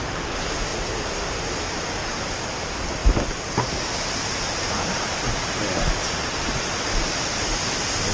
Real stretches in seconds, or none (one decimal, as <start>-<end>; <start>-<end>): 0.0-8.1